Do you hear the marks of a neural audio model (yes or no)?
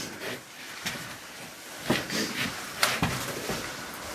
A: no